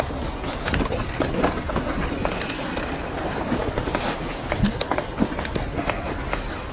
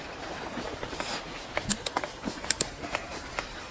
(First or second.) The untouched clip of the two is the first